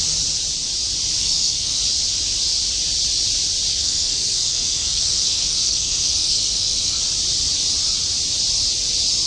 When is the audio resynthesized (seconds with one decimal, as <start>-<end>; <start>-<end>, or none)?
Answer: 1.2-1.8; 3.7-7.0